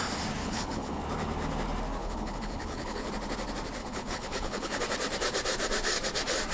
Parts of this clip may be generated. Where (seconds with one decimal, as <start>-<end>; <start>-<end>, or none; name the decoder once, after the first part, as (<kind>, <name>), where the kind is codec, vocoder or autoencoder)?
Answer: 0.4-1.0 (codec, HILCodec); 2.0-3.1; 3.8-4.8